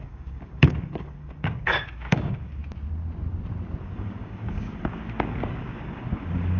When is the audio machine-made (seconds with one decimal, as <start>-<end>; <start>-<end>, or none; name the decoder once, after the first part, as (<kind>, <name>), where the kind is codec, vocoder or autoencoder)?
0.0-2.6 (codec, DAC); 3.8-6.6